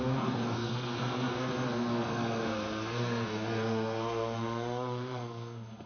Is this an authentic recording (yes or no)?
no